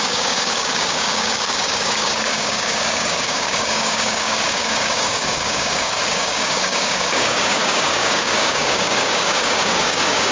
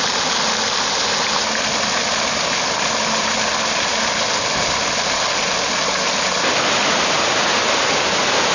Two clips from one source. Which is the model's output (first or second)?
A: first